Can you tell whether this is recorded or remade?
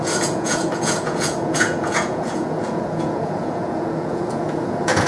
remade